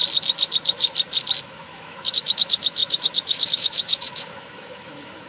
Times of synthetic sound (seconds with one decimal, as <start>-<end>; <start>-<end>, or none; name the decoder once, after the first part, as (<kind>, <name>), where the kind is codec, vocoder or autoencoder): 1.4-5.3 (autoencoder, DAC-VAE)